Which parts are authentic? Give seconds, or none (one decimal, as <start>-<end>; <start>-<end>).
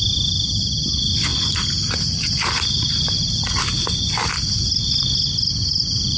0.0-1.3; 3.6-6.2